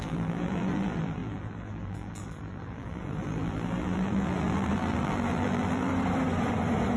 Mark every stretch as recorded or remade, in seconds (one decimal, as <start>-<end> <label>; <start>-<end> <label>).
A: 0.0-5.9 remade; 5.9-7.0 recorded